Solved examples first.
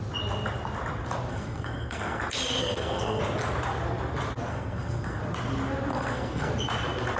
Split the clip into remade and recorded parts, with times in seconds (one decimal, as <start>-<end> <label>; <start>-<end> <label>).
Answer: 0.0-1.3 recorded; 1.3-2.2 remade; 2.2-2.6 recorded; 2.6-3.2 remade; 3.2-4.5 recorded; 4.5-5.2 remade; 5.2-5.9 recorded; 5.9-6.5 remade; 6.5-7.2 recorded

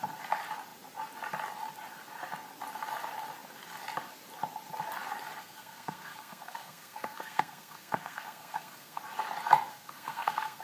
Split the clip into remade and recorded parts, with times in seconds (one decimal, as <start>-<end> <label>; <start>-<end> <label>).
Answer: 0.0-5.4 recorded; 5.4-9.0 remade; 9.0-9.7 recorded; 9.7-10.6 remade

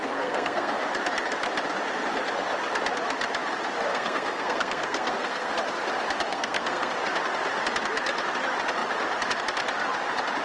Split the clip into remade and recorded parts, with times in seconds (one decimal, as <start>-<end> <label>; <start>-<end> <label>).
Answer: 0.0-0.8 remade; 0.8-3.9 recorded; 3.9-5.5 remade; 5.5-6.3 recorded; 6.3-6.9 remade; 6.9-10.4 recorded

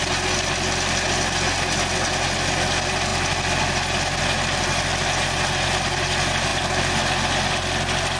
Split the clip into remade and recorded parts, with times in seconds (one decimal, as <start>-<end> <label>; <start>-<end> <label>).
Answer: 0.0-8.2 recorded

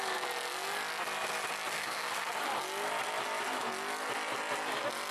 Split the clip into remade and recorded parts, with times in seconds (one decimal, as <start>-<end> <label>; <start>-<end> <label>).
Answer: 0.0-1.7 recorded; 1.7-2.3 remade; 2.3-5.1 recorded